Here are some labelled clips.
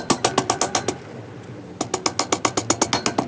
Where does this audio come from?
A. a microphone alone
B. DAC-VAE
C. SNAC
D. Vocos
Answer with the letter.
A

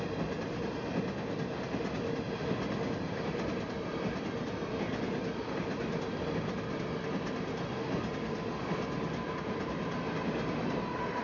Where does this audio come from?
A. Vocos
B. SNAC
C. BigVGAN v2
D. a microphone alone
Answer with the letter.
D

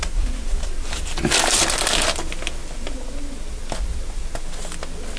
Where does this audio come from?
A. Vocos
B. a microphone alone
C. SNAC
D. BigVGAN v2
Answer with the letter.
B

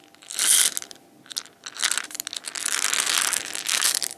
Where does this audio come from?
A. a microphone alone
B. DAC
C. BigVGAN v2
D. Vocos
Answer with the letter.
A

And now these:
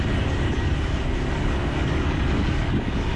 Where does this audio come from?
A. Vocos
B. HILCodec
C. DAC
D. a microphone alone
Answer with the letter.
C